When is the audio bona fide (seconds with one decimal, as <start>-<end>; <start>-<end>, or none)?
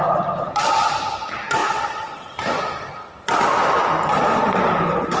0.0-5.2